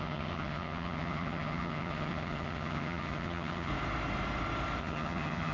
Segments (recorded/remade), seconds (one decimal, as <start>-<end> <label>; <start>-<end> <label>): 0.0-3.7 remade; 3.7-4.8 recorded; 4.8-5.5 remade